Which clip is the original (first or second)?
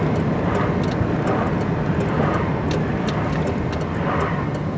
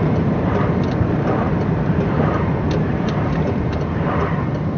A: first